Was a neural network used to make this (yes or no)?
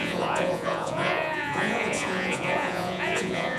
yes